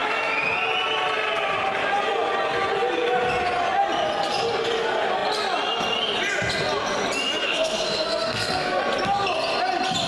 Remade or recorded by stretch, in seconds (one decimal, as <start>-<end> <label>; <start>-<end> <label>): 0.0-7.4 recorded; 7.4-8.8 remade; 8.8-10.1 recorded